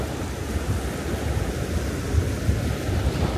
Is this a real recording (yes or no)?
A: yes